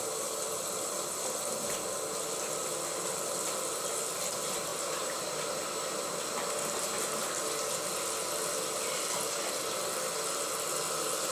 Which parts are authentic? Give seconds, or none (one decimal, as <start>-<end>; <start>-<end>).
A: 0.0-4.7; 6.1-11.3